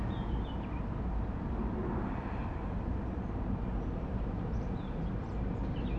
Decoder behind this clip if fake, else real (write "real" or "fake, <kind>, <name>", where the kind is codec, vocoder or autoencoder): fake, vocoder, BigVGAN v2